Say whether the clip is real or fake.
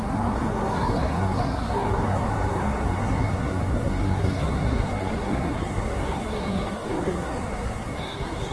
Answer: fake